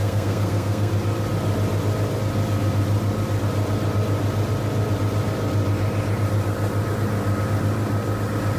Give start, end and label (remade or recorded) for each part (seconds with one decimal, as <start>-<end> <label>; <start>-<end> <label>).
0.0-0.9 remade; 0.9-8.6 recorded